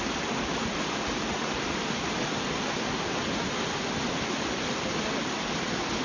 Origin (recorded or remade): recorded